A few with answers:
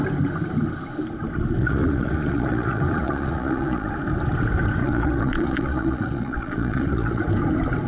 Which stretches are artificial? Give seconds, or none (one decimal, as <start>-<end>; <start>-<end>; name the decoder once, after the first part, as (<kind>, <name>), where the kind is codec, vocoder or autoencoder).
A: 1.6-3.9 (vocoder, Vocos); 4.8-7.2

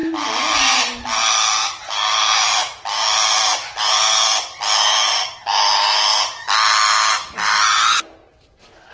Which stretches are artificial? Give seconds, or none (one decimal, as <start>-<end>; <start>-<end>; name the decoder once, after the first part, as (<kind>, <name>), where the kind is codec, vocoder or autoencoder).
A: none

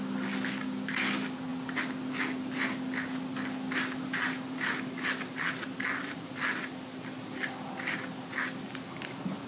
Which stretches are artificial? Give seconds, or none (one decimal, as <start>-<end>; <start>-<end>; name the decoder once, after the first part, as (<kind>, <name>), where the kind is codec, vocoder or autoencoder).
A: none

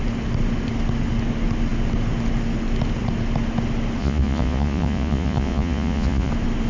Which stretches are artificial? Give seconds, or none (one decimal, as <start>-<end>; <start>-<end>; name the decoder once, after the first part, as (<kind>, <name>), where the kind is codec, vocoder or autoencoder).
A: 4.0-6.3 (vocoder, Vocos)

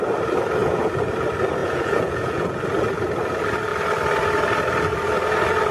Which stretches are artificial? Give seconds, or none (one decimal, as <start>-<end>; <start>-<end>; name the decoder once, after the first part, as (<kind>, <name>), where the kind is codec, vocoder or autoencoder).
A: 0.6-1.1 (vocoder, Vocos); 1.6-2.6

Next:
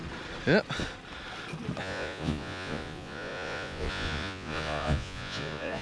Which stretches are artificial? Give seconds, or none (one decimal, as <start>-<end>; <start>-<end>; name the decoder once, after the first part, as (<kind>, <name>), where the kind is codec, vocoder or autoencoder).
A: 1.8-5.8 (vocoder, Vocos)

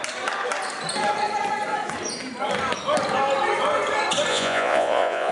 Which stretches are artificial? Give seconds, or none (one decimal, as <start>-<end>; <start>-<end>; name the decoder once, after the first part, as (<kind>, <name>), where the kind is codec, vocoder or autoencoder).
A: 4.3-5.3 (vocoder, Vocos)